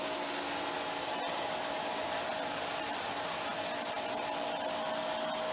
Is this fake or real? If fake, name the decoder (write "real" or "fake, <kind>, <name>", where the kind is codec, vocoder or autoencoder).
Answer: real